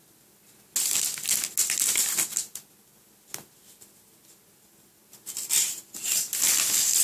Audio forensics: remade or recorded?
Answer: recorded